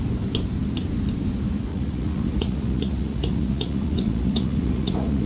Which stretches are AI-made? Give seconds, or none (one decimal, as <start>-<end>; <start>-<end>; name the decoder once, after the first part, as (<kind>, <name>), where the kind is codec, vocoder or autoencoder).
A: 1.7-5.3 (vocoder, Vocos)